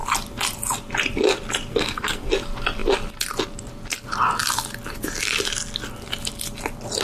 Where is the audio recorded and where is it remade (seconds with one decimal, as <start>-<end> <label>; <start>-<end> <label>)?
0.0-1.7 recorded; 1.7-2.3 remade; 2.3-7.0 recorded